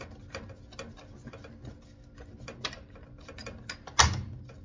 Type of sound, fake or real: real